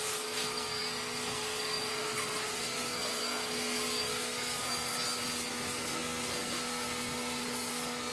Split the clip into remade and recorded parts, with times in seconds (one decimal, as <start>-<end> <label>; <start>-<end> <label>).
0.0-4.9 remade; 4.9-5.5 recorded; 5.5-8.1 remade